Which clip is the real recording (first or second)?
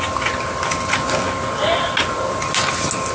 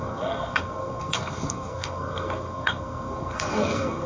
first